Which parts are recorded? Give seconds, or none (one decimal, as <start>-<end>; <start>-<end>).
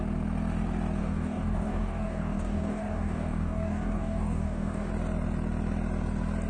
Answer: 0.0-1.0; 4.9-6.5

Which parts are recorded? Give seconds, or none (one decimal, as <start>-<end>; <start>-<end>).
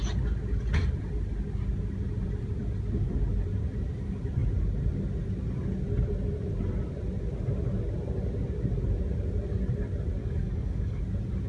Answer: 0.0-10.2; 11.0-11.5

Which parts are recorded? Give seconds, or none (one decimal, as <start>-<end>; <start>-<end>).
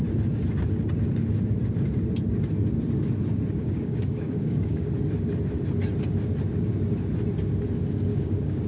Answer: 0.0-3.6; 4.9-8.1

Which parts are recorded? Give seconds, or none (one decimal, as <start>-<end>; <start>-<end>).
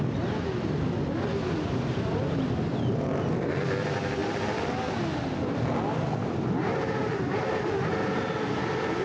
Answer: 0.0-9.0